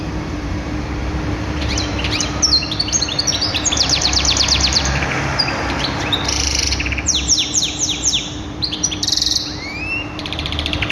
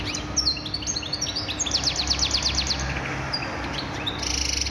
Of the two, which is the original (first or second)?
second